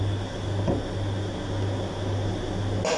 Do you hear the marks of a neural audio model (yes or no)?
no